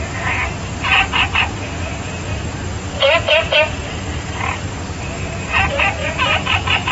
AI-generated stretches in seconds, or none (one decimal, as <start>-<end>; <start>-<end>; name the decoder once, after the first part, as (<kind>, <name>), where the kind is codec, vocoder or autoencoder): 6.0-6.9 (vocoder, Vocos)